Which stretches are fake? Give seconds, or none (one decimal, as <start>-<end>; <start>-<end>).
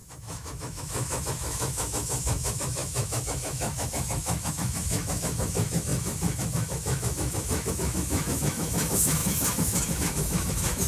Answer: 0.0-10.9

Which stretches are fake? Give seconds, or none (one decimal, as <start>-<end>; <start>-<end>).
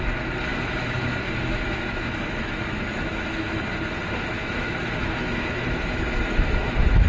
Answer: 0.5-3.7; 4.4-7.1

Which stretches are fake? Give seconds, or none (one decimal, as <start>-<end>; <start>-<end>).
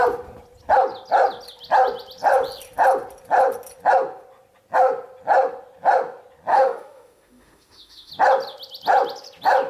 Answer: 6.5-8.1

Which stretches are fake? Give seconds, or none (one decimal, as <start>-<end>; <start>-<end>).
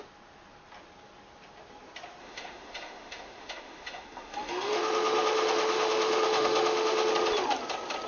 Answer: 2.2-7.1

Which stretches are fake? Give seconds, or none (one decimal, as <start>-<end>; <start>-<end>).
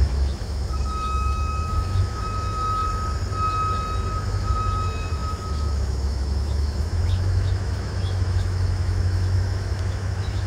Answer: 0.0-2.8; 4.2-10.5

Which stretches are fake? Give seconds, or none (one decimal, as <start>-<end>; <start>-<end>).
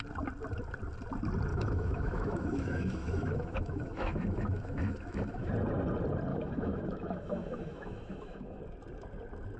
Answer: 1.5-5.5; 6.3-8.6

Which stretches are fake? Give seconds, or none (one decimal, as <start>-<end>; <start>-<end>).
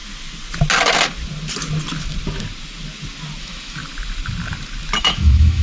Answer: 3.4-3.8; 5.0-5.6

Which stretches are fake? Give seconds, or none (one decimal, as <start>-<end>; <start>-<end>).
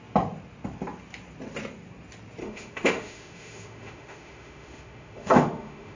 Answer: 2.4-6.0